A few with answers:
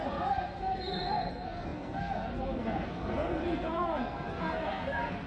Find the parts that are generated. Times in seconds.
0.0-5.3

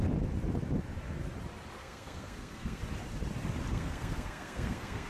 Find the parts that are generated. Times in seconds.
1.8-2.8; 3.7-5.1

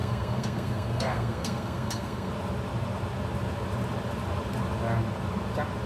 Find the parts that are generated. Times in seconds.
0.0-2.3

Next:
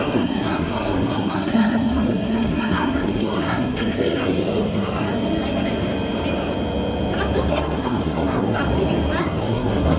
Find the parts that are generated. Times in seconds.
0.0-5.1; 7.5-8.6; 9.2-10.0

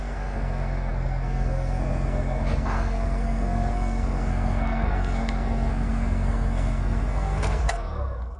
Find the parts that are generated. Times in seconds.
0.0-8.4

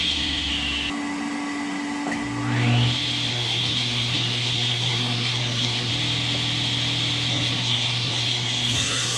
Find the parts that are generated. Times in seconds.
0.0-0.5; 3.3-5.9; 7.3-9.2

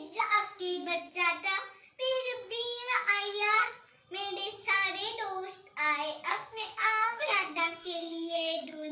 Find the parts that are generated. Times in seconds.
0.0-1.1; 2.5-3.8; 6.3-8.9